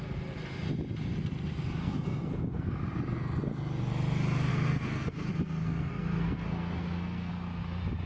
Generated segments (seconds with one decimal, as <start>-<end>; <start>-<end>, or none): 1.8-2.7; 4.5-7.3

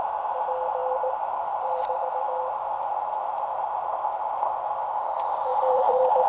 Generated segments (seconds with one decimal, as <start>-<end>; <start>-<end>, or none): 0.8-2.1; 5.5-6.3

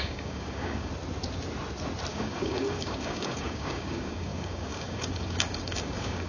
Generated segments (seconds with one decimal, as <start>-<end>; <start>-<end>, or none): 0.0-0.9; 2.1-6.3

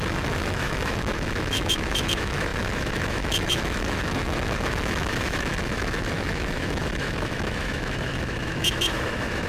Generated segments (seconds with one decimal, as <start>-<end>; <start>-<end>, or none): 0.0-9.5

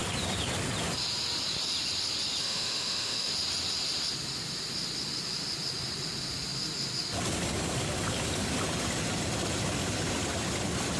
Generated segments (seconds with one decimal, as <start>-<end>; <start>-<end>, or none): 2.4-3.3